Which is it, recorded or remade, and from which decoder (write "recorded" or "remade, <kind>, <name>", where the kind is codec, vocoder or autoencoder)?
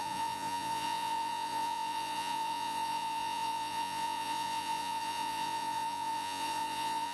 remade, vocoder, Vocos